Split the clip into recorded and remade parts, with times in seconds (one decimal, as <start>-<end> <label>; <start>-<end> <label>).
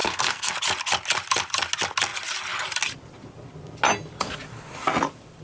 0.0-0.5 remade; 0.5-5.4 recorded